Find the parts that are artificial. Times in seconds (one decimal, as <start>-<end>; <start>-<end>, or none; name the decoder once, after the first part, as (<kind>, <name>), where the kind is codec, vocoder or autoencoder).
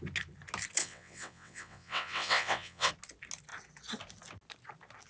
0.8-2.9 (vocoder, WaveNeXt)